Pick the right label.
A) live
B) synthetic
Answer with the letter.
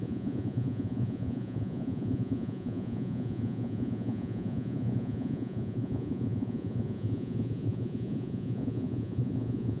B